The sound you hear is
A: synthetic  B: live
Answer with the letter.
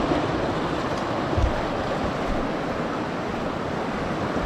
B